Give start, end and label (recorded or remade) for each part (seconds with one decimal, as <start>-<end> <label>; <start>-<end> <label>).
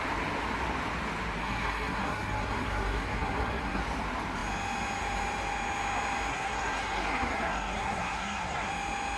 0.0-1.4 recorded; 1.4-3.8 remade; 3.8-6.3 recorded; 6.3-8.7 remade; 8.7-9.2 recorded